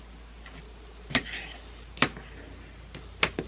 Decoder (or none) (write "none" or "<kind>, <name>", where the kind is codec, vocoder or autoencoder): none